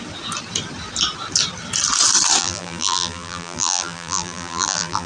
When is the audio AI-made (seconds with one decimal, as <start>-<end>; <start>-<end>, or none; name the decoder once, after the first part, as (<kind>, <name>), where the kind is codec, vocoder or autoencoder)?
2.4-5.1 (vocoder, BigVGAN v2)